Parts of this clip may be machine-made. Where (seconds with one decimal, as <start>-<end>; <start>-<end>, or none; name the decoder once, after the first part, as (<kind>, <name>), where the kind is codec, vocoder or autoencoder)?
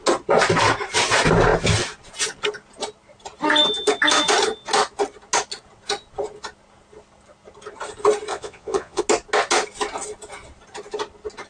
8.3-9.0 (vocoder, Vocos)